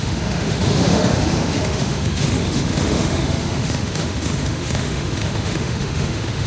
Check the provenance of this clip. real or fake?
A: fake